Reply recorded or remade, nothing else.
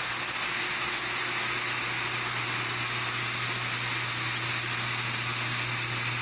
recorded